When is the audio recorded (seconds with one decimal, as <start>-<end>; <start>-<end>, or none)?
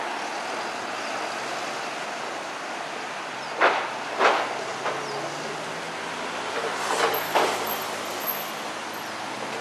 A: 0.0-9.6